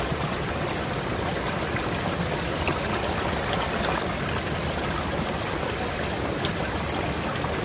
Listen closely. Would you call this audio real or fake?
real